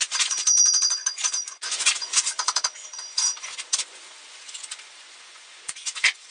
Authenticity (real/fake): fake